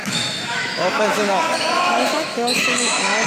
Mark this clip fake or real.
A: fake